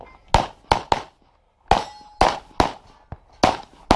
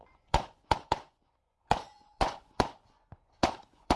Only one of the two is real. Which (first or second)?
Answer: first